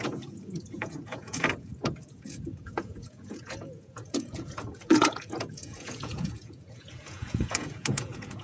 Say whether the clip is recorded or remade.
remade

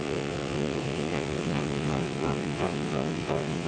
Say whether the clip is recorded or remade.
remade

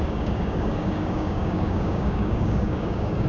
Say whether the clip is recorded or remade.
remade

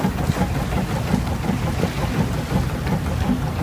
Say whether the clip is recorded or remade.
recorded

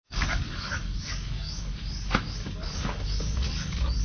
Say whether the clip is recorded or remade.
remade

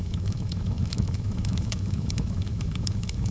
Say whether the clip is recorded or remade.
remade